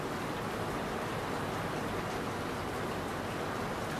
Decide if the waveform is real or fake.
real